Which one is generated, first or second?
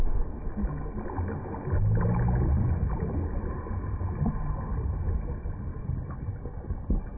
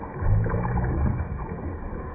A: second